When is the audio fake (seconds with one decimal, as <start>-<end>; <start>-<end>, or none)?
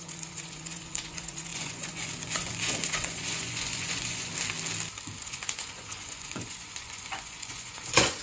0.0-4.3; 5.2-8.2